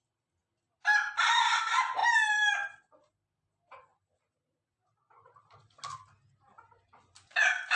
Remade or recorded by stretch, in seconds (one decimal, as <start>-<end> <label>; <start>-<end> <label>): 0.0-7.8 recorded